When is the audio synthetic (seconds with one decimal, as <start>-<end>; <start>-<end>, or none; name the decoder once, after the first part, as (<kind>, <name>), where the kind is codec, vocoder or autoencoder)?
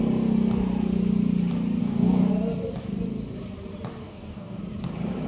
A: 1.8-2.3 (codec, DAC); 4.0-4.6